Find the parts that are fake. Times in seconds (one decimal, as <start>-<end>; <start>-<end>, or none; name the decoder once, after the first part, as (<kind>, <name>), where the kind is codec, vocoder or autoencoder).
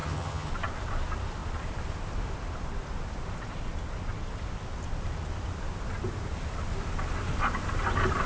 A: 0.0-0.5 (vocoder, HiFi-GAN)